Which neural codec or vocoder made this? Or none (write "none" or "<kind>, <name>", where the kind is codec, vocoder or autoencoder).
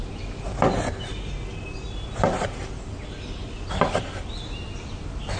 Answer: none